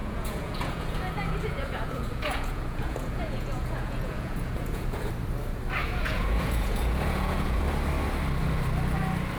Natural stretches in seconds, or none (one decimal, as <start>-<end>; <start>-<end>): 5.1-5.8; 7.6-9.4